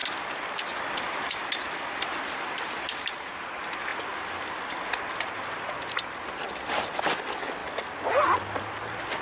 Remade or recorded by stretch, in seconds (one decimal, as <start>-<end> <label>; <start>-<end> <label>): 0.0-2.7 remade; 2.7-9.2 recorded